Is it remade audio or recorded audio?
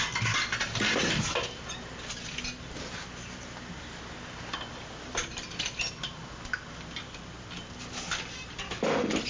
recorded